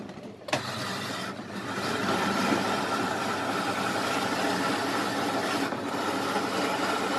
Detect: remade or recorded recorded